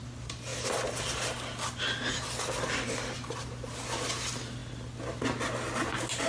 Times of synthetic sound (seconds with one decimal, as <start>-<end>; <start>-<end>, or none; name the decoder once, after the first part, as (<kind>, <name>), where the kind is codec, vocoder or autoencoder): none